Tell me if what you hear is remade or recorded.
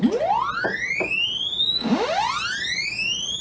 recorded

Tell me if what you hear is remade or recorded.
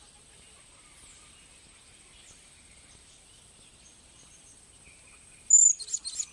recorded